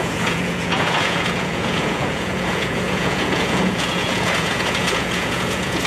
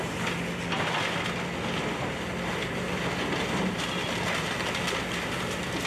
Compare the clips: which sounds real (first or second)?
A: second